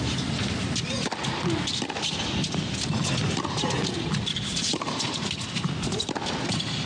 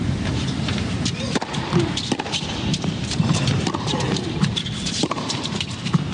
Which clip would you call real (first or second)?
first